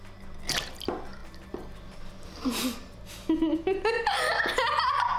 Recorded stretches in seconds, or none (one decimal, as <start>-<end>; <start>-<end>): 0.0-5.2